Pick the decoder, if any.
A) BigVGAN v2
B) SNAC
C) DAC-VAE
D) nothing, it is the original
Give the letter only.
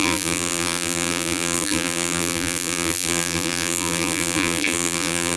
A